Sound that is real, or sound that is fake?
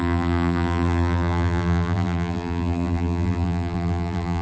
fake